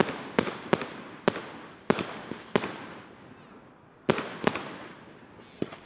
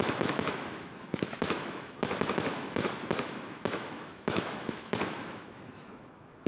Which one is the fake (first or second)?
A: second